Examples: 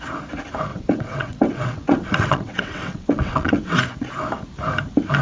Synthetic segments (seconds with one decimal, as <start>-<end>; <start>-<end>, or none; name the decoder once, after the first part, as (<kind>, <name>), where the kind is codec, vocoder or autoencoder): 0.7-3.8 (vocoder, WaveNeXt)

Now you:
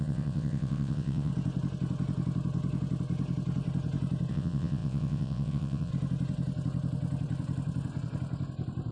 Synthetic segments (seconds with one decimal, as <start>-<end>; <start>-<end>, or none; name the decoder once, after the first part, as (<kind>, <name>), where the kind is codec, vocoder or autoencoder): 0.0-1.3 (vocoder, WaveNeXt); 4.3-5.9

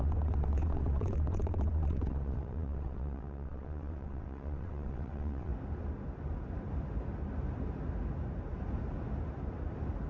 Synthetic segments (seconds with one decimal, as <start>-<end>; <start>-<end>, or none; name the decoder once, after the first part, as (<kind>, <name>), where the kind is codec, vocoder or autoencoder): 0.0-5.5 (vocoder, WaveNeXt)

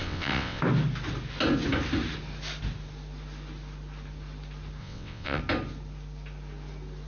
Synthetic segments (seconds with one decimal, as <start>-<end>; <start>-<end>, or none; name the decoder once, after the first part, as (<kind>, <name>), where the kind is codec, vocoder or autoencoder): 0.0-0.6 (vocoder, WaveNeXt); 4.8-5.4

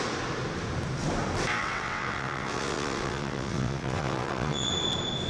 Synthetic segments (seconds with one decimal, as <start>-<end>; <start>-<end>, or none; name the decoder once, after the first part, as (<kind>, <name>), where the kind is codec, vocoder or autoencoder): 1.5-4.7 (vocoder, WaveNeXt)